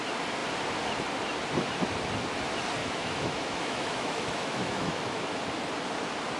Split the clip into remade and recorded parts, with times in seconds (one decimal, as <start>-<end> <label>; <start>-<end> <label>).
0.0-2.8 recorded; 2.8-5.4 remade; 5.4-6.4 recorded